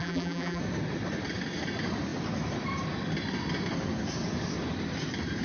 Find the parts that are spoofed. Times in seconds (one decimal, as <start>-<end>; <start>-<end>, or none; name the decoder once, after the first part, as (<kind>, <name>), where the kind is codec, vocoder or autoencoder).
0.0-0.6 (vocoder, BigVGAN v2)